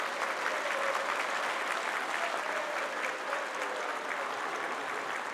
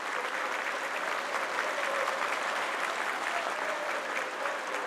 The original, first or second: first